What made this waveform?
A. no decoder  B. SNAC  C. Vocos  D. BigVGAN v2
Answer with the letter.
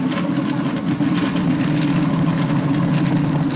A